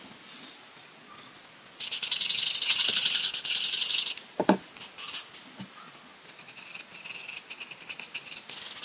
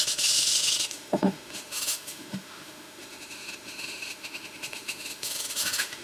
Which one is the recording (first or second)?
first